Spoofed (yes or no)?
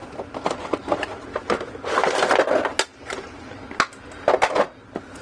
no